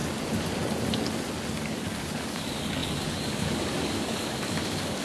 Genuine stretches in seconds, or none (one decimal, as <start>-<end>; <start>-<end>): 0.0-1.5